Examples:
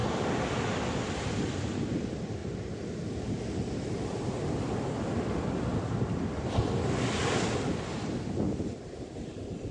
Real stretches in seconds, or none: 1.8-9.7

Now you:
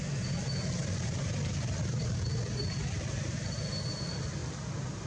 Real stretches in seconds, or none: 0.0-0.8; 3.6-5.1

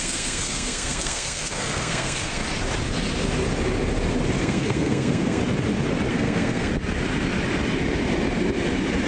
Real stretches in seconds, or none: 2.4-4.4; 5.4-6.1; 6.7-9.1

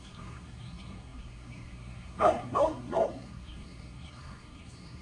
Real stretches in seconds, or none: none